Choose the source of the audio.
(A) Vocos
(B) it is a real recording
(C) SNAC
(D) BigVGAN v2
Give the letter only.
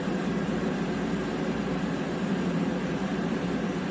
D